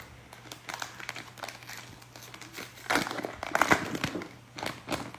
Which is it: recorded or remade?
recorded